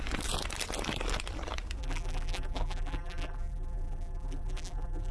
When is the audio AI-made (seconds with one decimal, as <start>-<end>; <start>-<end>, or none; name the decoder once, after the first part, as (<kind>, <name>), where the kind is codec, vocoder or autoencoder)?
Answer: 1.8-5.1 (vocoder, BigVGAN v2)